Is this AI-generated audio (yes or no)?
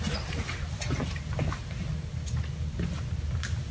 no